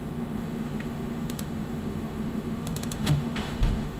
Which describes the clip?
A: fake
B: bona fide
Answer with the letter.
A